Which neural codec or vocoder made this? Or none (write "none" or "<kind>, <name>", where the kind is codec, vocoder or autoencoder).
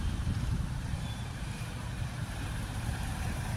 vocoder, BigVGAN v2